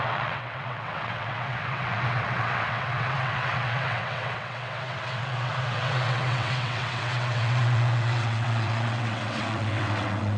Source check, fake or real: fake